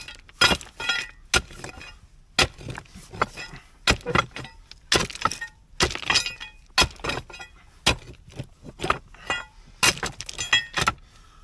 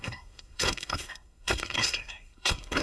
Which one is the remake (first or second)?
second